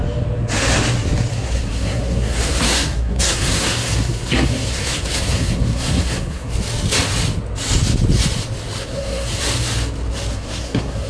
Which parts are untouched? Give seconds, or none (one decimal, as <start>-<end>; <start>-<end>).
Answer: 0.0-1.3; 6.5-8.8; 9.4-10.3